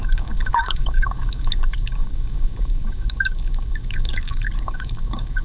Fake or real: fake